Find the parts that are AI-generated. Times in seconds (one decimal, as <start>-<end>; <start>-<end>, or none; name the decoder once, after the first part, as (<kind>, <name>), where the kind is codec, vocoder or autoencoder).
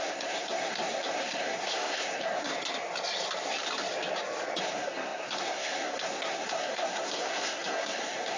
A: 0.0-2.5 (codec, SNAC); 4.6-8.4